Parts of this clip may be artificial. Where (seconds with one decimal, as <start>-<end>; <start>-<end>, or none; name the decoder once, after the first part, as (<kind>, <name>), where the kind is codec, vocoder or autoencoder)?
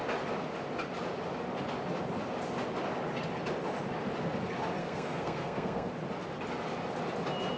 4.8-5.9 (codec, SNAC)